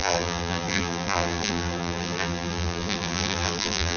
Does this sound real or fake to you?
fake